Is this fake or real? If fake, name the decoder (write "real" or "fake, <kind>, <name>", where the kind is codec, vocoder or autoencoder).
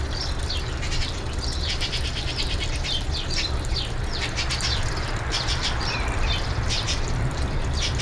fake, vocoder, BigVGAN v2